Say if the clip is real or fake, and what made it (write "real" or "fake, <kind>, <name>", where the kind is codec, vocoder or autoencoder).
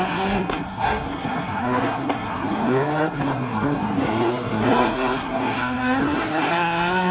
fake, codec, SNAC